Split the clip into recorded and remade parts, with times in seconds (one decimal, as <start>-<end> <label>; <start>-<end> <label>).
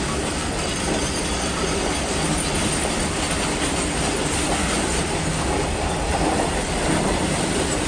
0.0-7.9 recorded